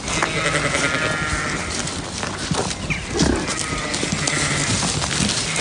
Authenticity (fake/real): real